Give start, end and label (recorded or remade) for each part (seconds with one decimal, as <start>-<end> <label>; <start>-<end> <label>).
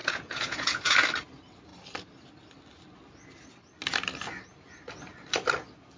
0.0-0.8 remade; 0.8-6.0 recorded